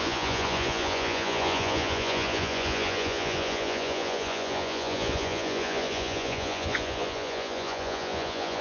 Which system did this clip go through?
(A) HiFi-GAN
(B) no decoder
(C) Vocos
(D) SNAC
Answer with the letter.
C